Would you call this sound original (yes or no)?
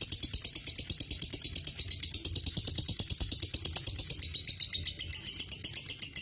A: yes